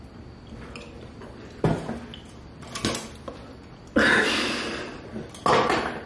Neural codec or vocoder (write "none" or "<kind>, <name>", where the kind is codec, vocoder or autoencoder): none